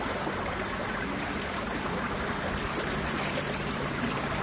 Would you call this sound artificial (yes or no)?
no